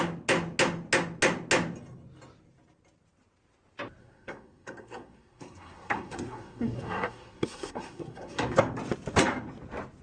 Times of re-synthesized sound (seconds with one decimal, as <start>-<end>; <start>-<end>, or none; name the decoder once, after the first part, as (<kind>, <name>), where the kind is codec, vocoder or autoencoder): 4.0-8.6 (codec, SNAC)